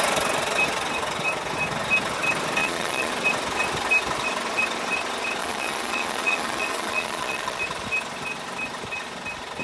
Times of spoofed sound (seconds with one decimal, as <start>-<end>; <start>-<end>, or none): 2.6-3.1; 5.4-7.6